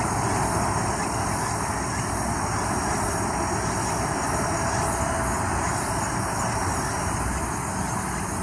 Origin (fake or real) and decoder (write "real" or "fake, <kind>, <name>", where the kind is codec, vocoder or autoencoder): real